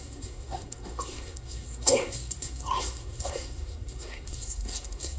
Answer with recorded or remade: remade